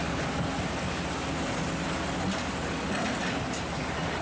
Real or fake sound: real